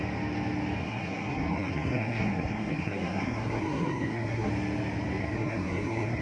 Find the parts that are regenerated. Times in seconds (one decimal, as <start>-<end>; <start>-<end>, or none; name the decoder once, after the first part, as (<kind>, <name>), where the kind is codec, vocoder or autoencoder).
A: 0.8-4.5 (codec, SNAC); 5.2-6.2